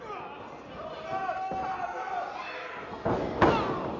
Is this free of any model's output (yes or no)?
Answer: yes